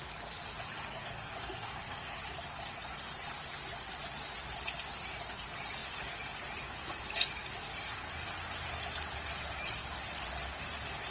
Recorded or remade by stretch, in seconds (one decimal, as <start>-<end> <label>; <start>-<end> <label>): 0.0-0.8 recorded; 0.8-2.2 remade; 2.2-11.1 recorded